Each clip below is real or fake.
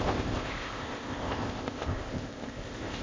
fake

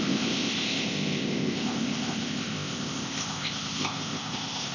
fake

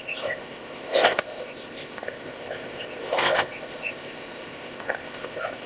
fake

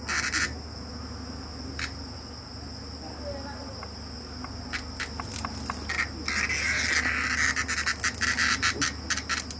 real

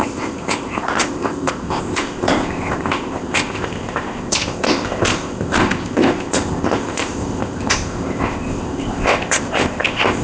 fake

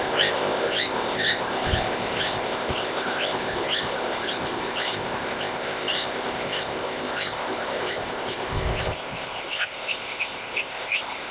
fake